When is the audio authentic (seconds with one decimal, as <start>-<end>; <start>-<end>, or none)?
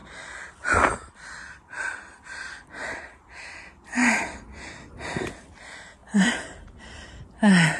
0.0-6.0; 6.8-7.8